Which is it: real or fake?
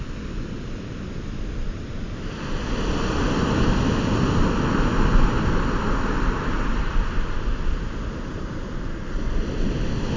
real